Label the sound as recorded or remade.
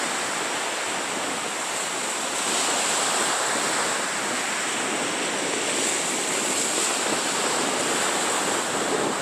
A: recorded